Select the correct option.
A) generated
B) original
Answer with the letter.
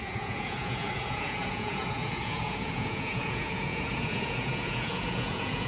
A